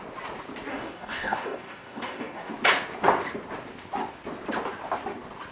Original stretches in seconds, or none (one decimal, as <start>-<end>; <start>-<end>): 0.0-0.7; 2.5-5.5